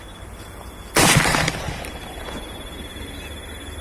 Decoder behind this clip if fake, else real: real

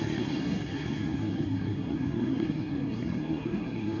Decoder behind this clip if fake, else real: fake, codec, SNAC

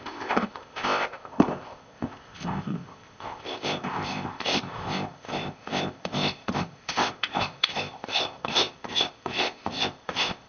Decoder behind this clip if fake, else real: fake, codec, ZipCodec